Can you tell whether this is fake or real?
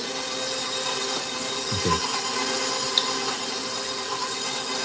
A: real